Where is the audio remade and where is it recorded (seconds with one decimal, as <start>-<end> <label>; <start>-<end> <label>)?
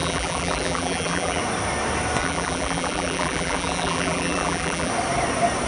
0.0-1.4 remade; 1.4-2.2 recorded; 2.2-4.9 remade; 4.9-5.7 recorded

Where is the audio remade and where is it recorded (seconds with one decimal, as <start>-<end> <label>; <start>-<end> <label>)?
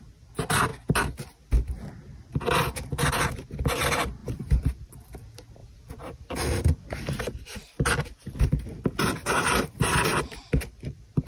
0.0-4.2 recorded; 4.2-4.9 remade; 4.9-5.6 recorded; 5.6-7.8 remade; 7.8-10.1 recorded; 10.1-11.3 remade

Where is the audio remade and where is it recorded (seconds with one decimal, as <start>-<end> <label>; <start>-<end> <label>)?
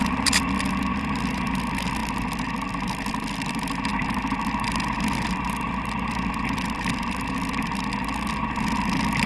0.0-9.3 remade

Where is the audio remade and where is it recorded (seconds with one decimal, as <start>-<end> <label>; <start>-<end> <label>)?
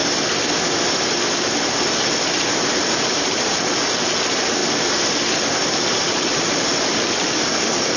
0.0-2.8 recorded; 2.8-4.6 remade; 4.6-5.4 recorded; 5.4-8.0 remade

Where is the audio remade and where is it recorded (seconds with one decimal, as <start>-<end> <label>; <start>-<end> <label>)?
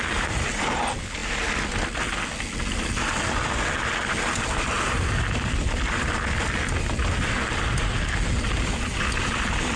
0.0-9.8 recorded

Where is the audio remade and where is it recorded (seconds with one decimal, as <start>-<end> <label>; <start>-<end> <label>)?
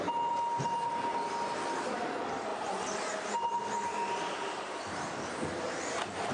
0.0-2.5 recorded; 2.5-6.3 remade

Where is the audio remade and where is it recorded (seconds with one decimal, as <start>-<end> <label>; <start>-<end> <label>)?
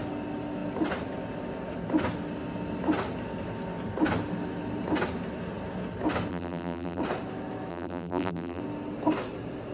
0.0-6.3 recorded; 6.3-7.0 remade; 7.0-7.7 recorded; 7.7-8.6 remade; 8.6-9.7 recorded